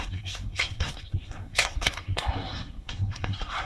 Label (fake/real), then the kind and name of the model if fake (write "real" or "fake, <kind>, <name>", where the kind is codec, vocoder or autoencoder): fake, codec, SNAC